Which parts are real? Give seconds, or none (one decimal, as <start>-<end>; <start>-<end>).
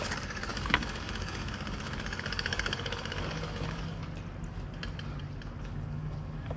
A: 4.0-5.6